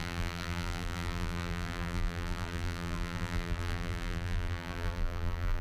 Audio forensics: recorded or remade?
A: remade